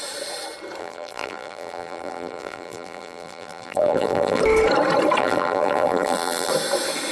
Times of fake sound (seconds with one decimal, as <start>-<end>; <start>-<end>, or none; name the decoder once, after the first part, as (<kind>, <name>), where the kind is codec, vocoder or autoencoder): 0.8-4.4 (vocoder, BigVGAN v2); 5.2-6.5